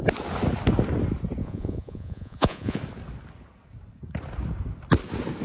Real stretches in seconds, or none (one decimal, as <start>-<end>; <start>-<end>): 0.0-1.4; 2.8-5.4